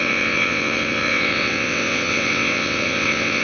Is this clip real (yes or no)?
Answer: no